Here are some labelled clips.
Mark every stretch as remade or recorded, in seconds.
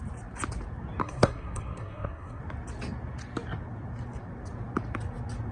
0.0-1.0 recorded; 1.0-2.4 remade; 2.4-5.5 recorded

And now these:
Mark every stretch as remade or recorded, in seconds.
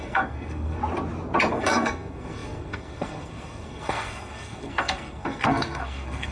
0.0-0.8 remade; 0.8-1.5 recorded; 1.5-6.3 remade